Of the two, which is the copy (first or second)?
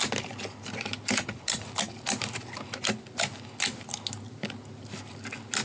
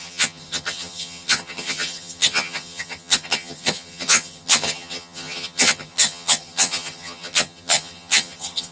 second